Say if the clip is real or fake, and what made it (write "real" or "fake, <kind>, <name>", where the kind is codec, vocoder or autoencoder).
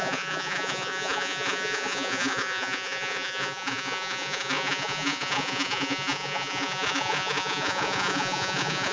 fake, vocoder, Vocos